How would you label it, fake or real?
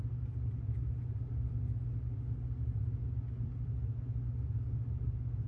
real